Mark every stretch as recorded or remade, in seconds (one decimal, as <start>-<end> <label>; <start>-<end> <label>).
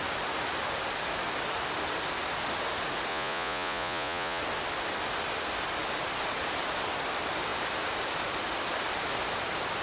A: 0.0-3.1 recorded; 3.1-4.4 remade; 4.4-9.8 recorded